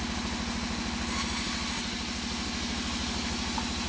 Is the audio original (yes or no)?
yes